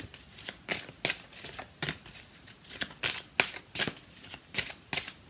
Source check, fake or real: real